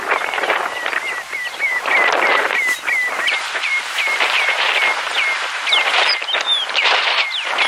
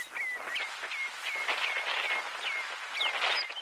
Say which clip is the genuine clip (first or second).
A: second